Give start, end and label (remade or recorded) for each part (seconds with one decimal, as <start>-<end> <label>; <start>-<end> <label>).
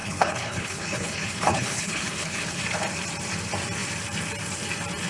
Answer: 0.0-2.6 remade; 2.6-5.1 recorded